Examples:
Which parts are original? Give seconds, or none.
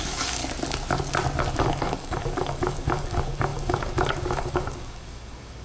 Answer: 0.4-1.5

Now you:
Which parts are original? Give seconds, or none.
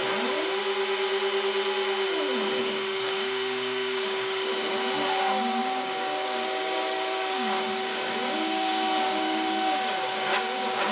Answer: 0.0-2.6; 4.5-5.6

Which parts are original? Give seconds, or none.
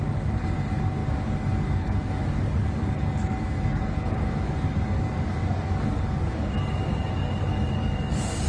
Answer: none